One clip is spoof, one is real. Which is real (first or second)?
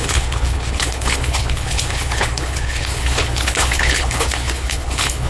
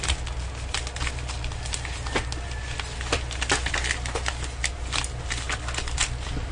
second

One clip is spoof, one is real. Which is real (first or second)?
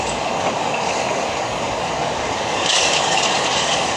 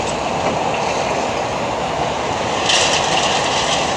second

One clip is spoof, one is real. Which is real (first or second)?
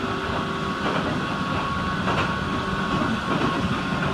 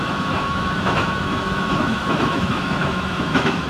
first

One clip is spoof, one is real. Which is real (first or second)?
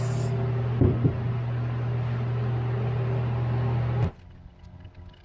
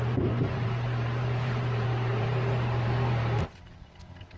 first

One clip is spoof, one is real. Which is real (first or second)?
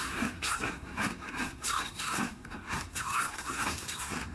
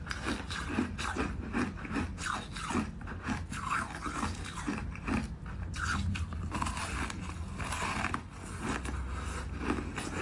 second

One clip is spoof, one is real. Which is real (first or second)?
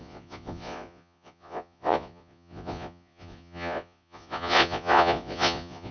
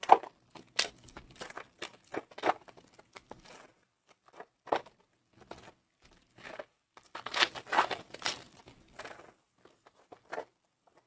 second